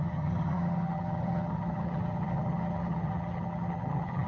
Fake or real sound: fake